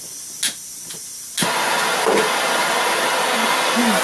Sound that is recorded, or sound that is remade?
recorded